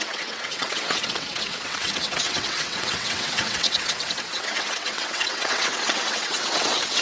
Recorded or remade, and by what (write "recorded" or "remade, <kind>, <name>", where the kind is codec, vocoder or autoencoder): remade, vocoder, WaveNeXt